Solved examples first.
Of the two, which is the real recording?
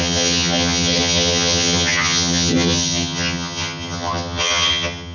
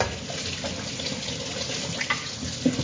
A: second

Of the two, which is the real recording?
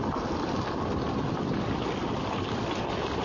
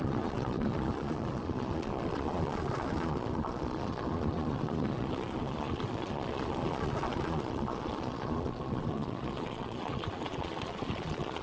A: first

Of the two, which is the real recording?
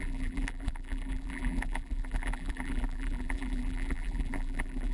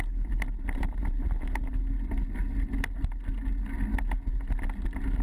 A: second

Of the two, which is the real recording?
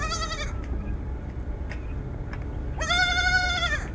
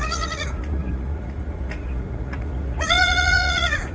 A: first